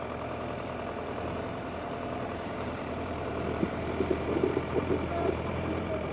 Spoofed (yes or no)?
yes